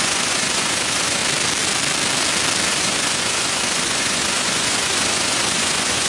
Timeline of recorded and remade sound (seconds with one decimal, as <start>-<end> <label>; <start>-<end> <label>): 0.0-1.2 remade; 1.2-2.7 recorded; 2.7-6.1 remade